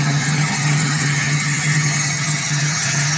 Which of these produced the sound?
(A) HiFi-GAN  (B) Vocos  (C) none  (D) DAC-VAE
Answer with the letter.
A